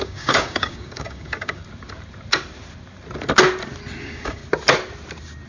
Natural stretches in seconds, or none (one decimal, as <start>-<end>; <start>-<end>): 1.6-4.0; 4.4-5.5